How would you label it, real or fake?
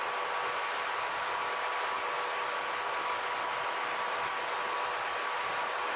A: real